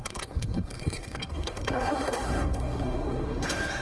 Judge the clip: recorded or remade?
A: remade